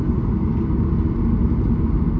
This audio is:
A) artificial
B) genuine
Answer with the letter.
B